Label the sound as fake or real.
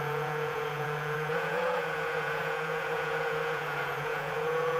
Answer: fake